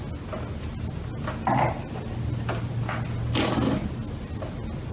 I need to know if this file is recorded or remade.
recorded